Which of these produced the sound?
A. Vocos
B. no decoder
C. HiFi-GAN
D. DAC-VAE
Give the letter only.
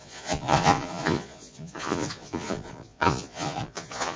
A